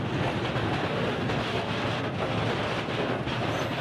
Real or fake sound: real